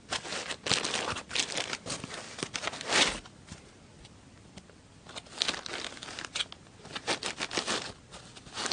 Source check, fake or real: real